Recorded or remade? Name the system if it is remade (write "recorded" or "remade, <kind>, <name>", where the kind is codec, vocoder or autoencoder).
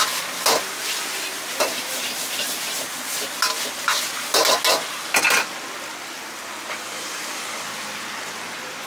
recorded